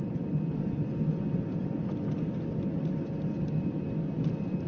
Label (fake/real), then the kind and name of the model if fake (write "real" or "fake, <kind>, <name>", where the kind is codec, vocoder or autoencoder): real